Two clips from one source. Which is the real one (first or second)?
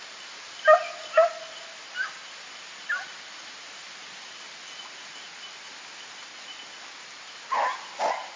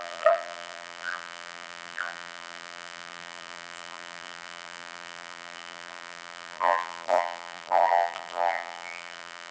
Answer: first